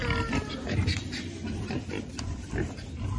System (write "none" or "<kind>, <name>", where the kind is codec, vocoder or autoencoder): none